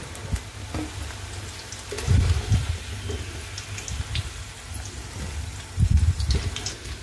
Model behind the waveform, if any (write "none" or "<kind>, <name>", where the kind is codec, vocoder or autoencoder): none